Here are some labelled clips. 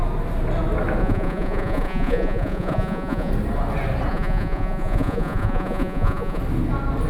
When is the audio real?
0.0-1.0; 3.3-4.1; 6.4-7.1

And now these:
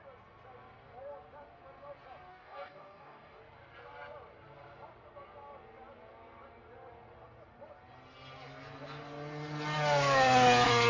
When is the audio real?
0.0-2.3; 3.4-10.9

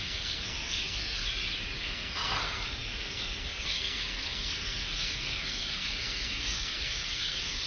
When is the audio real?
1.2-1.8

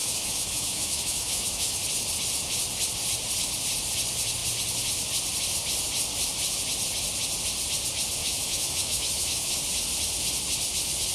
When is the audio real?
1.8-8.2; 9.5-11.1

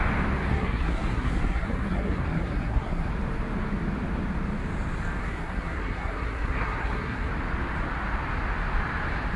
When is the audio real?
0.0-0.5; 3.1-5.2; 7.3-9.4

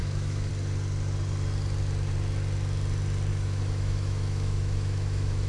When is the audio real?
0.5-3.3

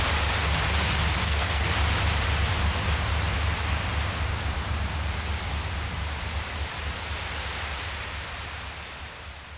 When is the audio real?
0.0-1.2; 1.7-9.6